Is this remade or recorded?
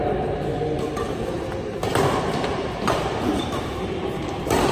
recorded